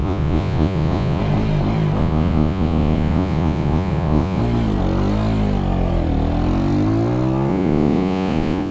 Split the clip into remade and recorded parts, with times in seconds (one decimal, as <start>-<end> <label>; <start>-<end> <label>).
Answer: 0.0-1.2 remade; 1.2-2.0 recorded; 2.0-4.4 remade; 4.4-7.5 recorded; 7.5-8.7 remade